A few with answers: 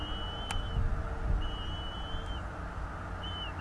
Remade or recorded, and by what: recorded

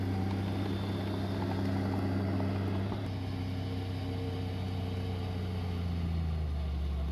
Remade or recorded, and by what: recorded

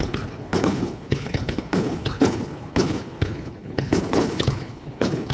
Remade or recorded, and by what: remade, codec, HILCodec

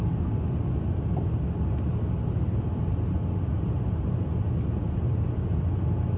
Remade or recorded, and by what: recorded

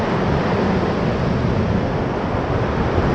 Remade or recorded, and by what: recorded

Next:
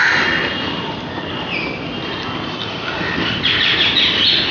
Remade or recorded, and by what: recorded